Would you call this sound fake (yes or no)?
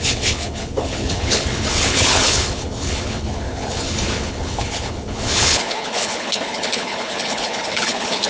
yes